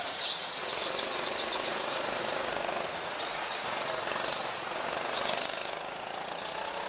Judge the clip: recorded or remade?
remade